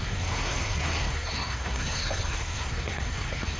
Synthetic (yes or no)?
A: yes